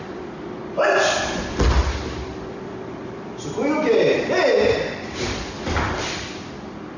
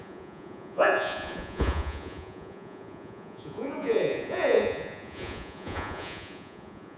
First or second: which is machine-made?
second